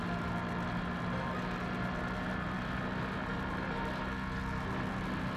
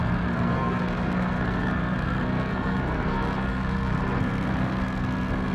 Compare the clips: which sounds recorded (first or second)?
first